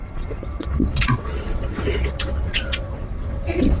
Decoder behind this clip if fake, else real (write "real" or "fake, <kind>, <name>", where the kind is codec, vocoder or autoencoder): fake, vocoder, WaveNeXt